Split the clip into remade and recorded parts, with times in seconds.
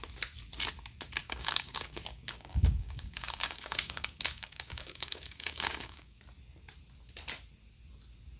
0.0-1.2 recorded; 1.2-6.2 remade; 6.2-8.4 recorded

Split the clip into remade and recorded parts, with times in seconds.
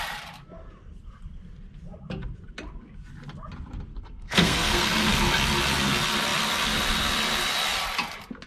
0.0-3.9 recorded; 3.9-5.1 remade; 5.1-8.5 recorded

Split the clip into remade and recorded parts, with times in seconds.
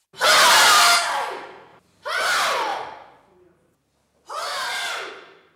0.0-5.6 recorded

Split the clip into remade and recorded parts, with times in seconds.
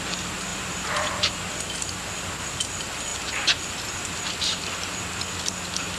0.0-0.5 recorded; 0.5-1.3 remade; 1.3-6.0 recorded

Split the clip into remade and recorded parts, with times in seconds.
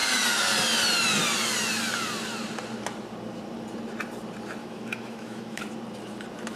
0.0-4.6 recorded; 4.6-5.6 remade; 5.6-6.6 recorded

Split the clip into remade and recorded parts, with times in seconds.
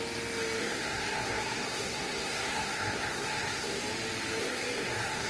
0.0-0.6 recorded; 0.6-3.8 remade; 3.8-4.4 recorded; 4.4-5.3 remade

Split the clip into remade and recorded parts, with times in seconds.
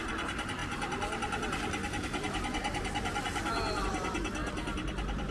0.0-5.3 recorded